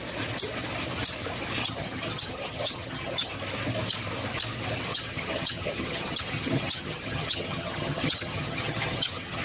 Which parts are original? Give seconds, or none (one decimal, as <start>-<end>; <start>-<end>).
0.0-1.6; 3.3-4.9